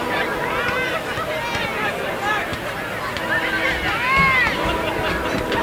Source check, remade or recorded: recorded